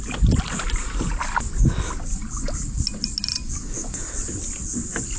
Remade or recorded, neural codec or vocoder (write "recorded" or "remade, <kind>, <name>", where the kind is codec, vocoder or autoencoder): recorded